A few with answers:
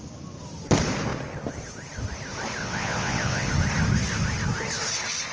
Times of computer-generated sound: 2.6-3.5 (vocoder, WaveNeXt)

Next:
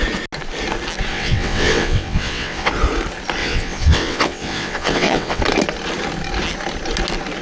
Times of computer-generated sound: 1.1-2.7 (vocoder, WaveNeXt); 3.4-5.4

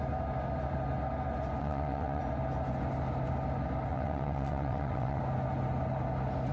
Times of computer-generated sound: 1.6-2.2 (vocoder, WaveNeXt); 3.9-5.2

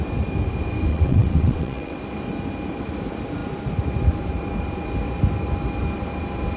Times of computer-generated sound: 0.9-2.0 (vocoder, WaveNeXt)

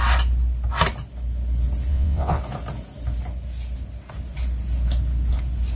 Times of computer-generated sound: 1.9-2.4 (vocoder, WaveNeXt)

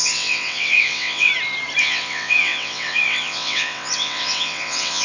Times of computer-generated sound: 0.0-1.3 (vocoder, WaveNeXt); 1.8-5.0

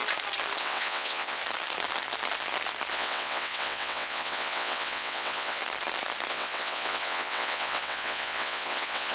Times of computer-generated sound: 0.6-1.4 (vocoder, WaveNeXt); 2.9-5.6; 6.3-9.1

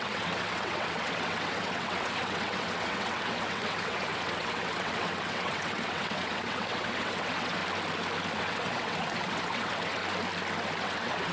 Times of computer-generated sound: 0.0-7.6 (vocoder, WaveNeXt); 8.4-10.0; 10.8-11.3